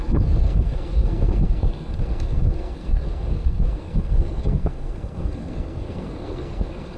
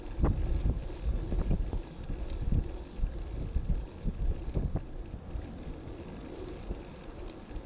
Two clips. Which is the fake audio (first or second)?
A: first